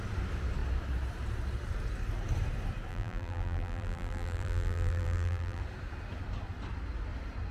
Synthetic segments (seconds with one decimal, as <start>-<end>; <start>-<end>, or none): 2.9-5.6